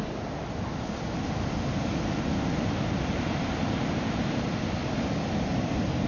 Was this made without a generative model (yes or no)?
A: yes